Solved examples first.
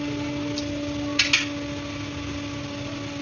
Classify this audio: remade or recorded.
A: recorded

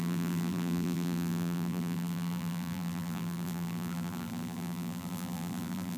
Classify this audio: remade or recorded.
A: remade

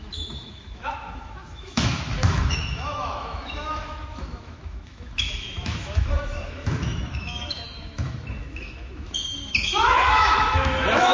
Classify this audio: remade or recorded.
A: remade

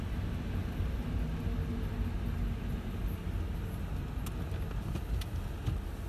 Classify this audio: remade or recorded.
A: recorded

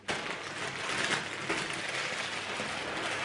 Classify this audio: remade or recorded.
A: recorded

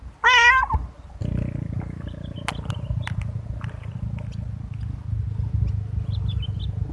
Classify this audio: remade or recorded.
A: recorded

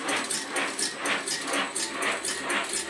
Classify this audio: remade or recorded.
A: recorded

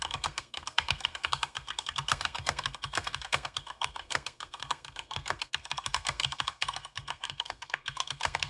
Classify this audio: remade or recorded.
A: remade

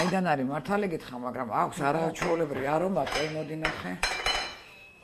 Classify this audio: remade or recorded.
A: remade